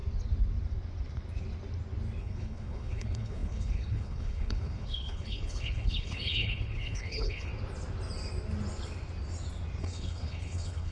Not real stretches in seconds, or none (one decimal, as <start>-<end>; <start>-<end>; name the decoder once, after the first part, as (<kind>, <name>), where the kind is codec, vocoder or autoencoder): 2.2-7.5 (codec, HILCodec); 9.8-10.9